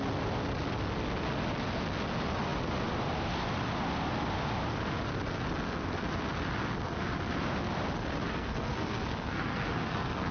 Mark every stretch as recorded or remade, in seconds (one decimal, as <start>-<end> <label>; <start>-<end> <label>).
0.0-8.3 recorded; 8.3-10.3 remade